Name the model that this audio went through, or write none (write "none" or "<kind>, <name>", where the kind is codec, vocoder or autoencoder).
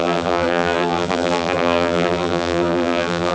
vocoder, BigVGAN v2